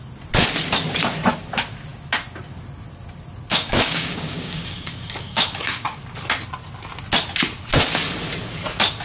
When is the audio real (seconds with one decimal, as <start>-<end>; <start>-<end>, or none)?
0.0-3.5; 6.0-9.0